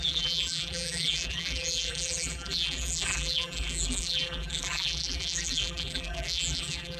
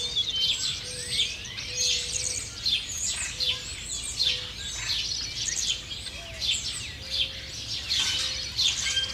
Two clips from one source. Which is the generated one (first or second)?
first